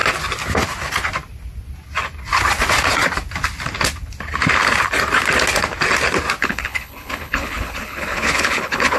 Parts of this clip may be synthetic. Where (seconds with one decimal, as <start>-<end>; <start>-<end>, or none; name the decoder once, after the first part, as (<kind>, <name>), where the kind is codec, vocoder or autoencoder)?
6.4-9.0 (codec, HILCodec)